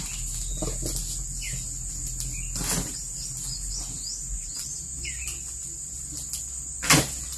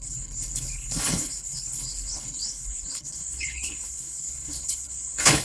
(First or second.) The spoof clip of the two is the second